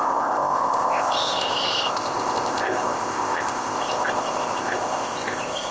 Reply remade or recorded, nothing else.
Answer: remade